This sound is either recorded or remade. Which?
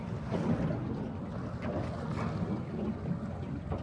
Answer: recorded